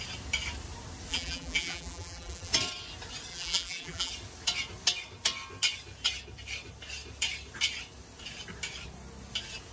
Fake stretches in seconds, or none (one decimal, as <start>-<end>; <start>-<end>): 1.1-2.5; 3.3-4.1